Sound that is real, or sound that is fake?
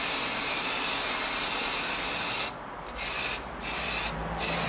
real